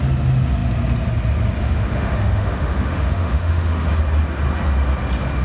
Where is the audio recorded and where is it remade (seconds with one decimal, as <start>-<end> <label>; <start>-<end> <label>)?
0.0-1.6 recorded; 1.6-3.9 remade; 3.9-5.4 recorded